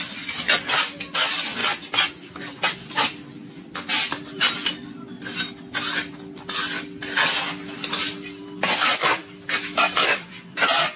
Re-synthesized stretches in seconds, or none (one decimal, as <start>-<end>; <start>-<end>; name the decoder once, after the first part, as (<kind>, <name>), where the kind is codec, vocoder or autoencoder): none